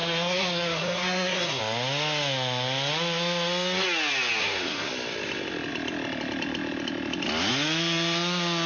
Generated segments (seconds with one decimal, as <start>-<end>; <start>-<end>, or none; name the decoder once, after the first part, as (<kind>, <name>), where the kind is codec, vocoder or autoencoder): 0.0-1.6 (codec, SNAC); 4.4-4.9